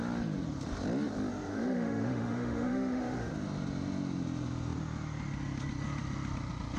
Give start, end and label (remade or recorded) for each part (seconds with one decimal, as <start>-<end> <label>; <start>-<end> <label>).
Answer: 0.0-1.3 recorded; 1.3-3.3 remade; 3.3-6.8 recorded